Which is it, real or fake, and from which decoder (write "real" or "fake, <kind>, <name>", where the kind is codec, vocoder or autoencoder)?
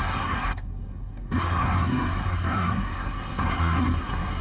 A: fake, codec, SNAC